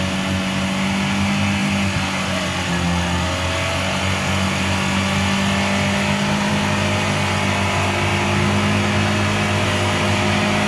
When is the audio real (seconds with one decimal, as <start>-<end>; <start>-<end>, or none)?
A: 0.0-10.7